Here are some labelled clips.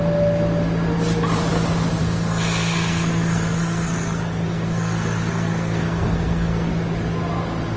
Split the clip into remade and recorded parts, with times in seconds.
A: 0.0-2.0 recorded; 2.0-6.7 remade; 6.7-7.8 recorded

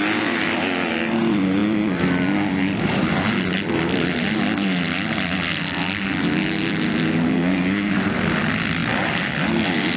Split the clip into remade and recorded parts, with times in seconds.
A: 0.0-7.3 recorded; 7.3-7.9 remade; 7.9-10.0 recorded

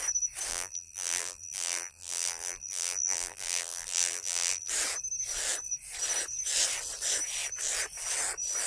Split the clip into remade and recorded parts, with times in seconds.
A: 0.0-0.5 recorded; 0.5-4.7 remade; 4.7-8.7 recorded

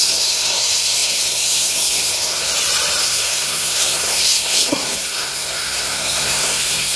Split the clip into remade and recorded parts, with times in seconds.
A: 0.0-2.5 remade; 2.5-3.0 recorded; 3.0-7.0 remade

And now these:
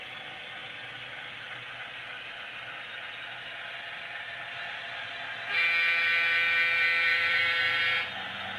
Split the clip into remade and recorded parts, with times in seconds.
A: 0.0-7.1 recorded; 7.1-7.8 remade; 7.8-8.6 recorded

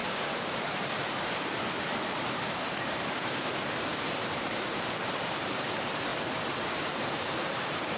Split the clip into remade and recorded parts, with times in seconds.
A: 0.0-1.8 recorded; 1.8-8.0 remade